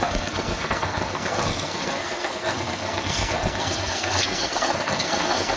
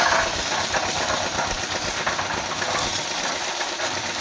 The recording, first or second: second